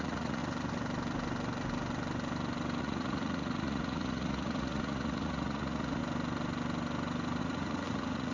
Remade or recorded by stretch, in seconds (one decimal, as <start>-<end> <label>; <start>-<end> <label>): 0.0-0.4 remade; 0.4-2.8 recorded; 2.8-6.0 remade; 6.0-7.4 recorded; 7.4-8.3 remade